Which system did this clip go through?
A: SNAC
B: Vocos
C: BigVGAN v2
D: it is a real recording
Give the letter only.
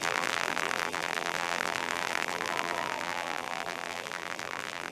C